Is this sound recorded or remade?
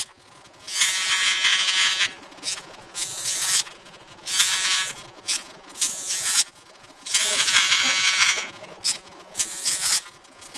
remade